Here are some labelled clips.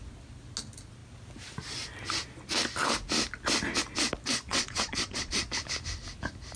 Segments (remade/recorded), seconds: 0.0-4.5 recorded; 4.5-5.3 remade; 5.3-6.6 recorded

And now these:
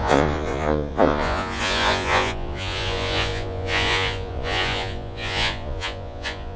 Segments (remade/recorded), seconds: 0.0-6.6 remade

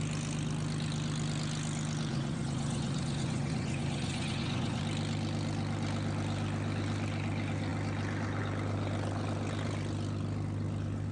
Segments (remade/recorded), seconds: 0.0-2.1 recorded; 2.1-4.8 remade; 4.8-11.1 recorded